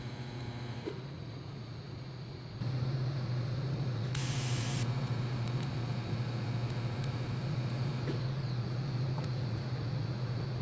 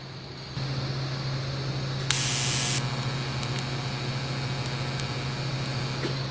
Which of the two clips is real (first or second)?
second